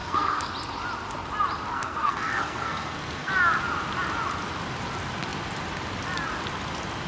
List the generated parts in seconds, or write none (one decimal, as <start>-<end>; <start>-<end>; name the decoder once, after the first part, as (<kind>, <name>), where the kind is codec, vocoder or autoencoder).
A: 0.0-0.5 (codec, SNAC); 1.7-3.3